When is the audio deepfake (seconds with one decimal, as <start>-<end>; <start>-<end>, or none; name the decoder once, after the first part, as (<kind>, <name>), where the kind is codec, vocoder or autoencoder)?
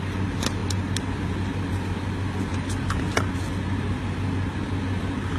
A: none